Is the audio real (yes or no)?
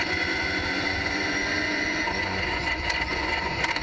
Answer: no